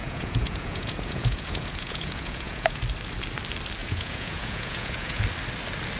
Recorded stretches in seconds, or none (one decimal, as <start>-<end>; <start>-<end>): 2.8-3.8; 5.2-6.0